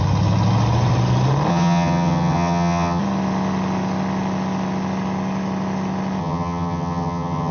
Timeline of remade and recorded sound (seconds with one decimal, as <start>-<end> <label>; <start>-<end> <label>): 0.0-1.5 recorded; 1.5-3.0 remade; 3.0-6.2 recorded; 6.2-7.5 remade